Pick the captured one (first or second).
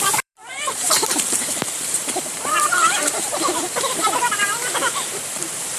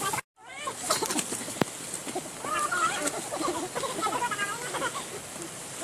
second